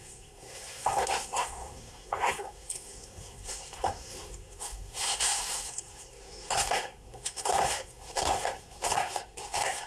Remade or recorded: remade